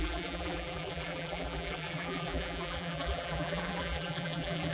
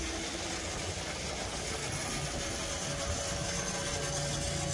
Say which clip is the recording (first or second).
second